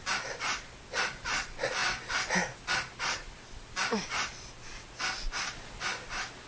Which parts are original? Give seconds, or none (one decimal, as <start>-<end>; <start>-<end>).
none